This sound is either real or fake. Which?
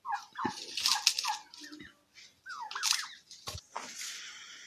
real